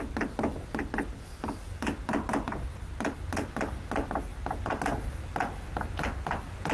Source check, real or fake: real